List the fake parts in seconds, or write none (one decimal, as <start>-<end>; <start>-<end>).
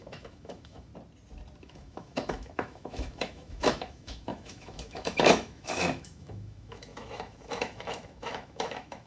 0.0-0.9; 1.6-9.1